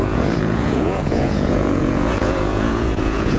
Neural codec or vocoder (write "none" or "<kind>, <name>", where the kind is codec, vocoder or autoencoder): vocoder, Vocos